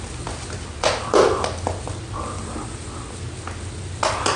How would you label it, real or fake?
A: real